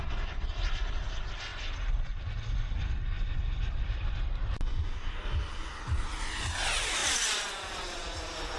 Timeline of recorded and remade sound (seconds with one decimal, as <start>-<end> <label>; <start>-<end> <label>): 0.0-8.6 recorded